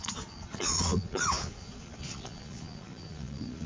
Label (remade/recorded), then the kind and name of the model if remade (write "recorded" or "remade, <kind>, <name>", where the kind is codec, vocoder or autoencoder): remade, vocoder, Vocos